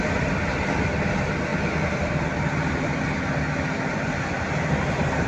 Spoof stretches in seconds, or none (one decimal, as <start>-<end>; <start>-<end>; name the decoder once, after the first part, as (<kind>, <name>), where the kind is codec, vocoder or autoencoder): none